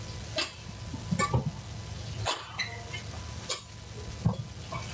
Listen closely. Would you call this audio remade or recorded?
recorded